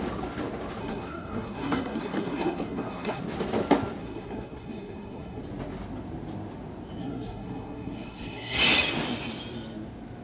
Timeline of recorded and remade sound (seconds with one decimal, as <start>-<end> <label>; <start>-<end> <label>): 0.0-0.8 recorded; 0.8-3.2 remade; 3.2-4.0 recorded; 4.0-5.4 remade; 5.4-7.0 recorded; 7.0-8.6 remade; 8.6-10.2 recorded